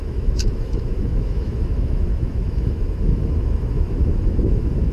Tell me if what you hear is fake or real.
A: fake